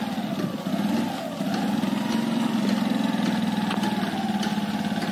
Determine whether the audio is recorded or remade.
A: recorded